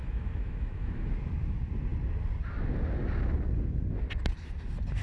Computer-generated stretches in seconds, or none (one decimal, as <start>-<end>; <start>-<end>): 0.0-1.1

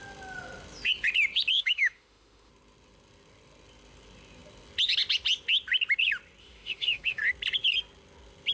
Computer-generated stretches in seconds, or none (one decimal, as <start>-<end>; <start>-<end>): 1.5-2.5; 6.4-7.2

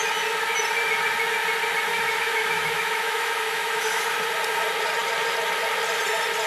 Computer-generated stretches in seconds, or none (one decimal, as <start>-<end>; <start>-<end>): 1.9-4.0

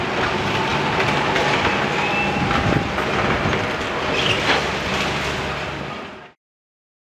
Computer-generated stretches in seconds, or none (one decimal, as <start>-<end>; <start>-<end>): none

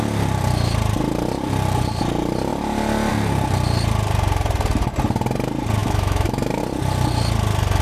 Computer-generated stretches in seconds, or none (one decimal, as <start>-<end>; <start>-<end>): 5.8-6.6